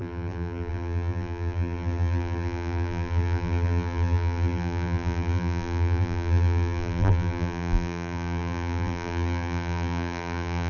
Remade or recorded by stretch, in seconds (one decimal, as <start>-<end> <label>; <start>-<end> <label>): 0.0-10.7 remade